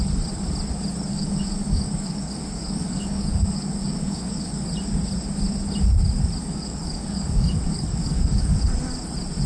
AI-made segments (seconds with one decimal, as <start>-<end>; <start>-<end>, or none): 1.1-4.6; 6.4-8.6